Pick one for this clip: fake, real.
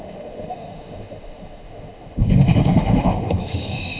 fake